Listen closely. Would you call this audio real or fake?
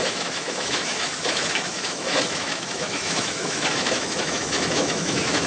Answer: fake